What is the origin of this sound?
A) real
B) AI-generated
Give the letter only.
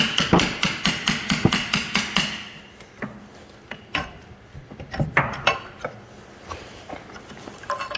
A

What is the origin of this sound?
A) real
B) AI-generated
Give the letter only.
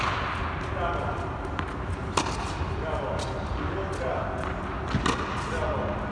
A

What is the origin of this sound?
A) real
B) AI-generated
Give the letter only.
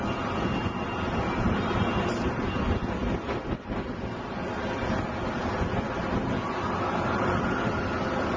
A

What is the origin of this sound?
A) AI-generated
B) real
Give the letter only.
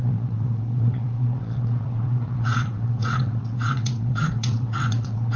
A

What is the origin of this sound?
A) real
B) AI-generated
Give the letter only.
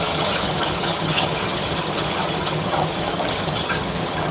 B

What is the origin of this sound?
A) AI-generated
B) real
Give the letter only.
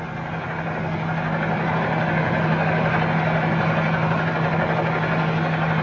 B